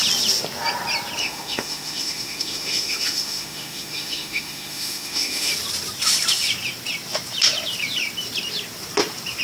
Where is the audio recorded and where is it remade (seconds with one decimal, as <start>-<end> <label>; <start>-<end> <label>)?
0.0-1.2 recorded; 1.2-5.5 remade; 5.5-9.4 recorded